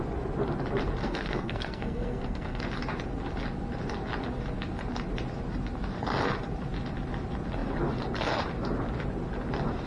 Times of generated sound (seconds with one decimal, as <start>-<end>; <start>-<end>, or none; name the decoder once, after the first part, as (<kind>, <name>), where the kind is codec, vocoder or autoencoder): 1.0-2.6 (codec, SNAC)